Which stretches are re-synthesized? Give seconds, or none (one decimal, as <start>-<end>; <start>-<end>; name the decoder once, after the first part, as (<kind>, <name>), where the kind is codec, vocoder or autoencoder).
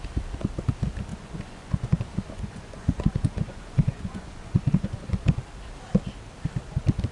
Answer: 1.1-5.1 (vocoder, Vocos)